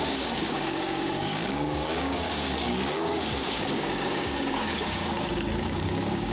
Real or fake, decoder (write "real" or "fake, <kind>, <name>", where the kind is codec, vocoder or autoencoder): fake, codec, DAC